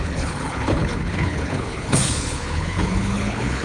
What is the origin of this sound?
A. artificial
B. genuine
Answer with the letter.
A